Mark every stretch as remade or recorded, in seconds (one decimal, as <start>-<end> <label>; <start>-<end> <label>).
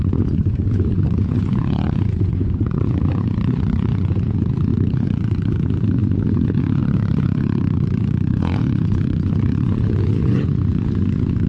0.0-11.5 remade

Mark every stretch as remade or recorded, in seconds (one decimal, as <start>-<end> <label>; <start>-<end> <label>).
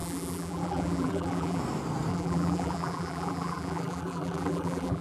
0.0-1.6 remade; 1.6-2.1 recorded; 2.1-5.0 remade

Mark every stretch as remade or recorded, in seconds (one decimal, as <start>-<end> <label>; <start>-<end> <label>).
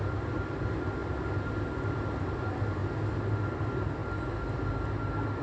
0.0-5.4 recorded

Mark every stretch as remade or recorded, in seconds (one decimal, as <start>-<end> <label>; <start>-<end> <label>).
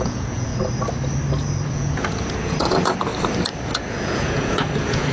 0.0-0.5 remade; 0.5-1.7 recorded; 1.7-3.1 remade; 3.1-3.7 recorded; 3.7-5.1 remade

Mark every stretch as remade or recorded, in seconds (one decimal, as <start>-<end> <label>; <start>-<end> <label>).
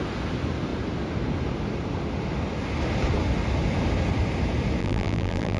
0.0-4.8 recorded; 4.8-5.6 remade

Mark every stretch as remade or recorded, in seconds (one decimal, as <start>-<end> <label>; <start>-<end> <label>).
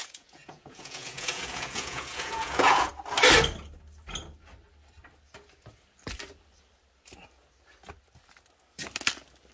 0.0-2.9 remade; 2.9-9.5 recorded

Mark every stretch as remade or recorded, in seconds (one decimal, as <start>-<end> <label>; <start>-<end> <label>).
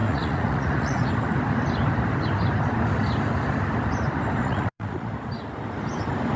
0.0-1.1 remade; 1.1-4.4 recorded; 4.4-5.1 remade; 5.1-6.4 recorded